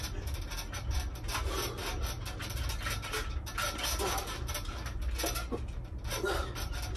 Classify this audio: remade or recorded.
recorded